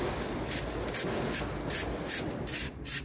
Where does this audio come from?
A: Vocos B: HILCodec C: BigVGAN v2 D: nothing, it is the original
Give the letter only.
D